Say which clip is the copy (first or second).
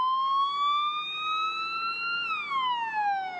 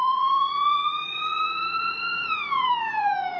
second